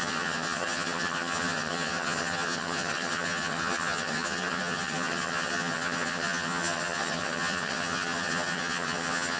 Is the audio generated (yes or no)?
yes